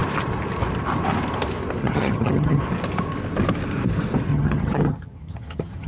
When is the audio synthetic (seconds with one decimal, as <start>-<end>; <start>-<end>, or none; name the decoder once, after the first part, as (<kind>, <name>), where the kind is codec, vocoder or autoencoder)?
1.8-2.6 (vocoder, HiFi-GAN); 4.3-5.9